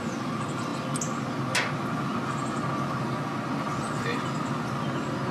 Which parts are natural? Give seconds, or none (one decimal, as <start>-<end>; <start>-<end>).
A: 0.0-5.3